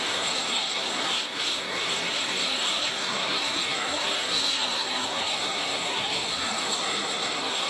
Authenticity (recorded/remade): remade